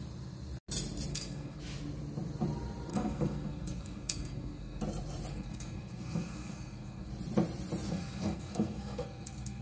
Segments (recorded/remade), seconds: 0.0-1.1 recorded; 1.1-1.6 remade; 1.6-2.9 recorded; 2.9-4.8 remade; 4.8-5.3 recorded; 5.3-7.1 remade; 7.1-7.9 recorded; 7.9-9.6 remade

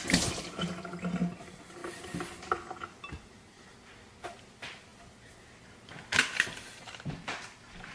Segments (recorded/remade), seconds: 0.0-7.9 recorded

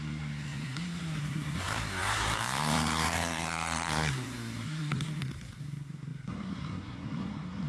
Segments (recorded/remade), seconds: 0.0-7.7 remade

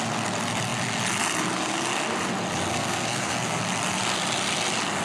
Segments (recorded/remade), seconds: 0.0-2.7 recorded; 2.7-3.6 remade; 3.6-5.0 recorded